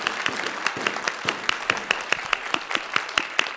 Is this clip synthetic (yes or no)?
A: no